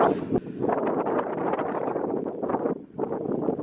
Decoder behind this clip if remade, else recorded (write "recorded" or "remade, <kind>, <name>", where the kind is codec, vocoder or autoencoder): recorded